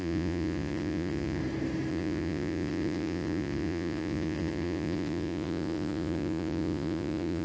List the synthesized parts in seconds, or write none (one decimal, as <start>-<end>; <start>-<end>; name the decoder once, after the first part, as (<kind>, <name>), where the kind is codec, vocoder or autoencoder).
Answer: 0.0-1.4 (vocoder, Vocos); 1.9-7.4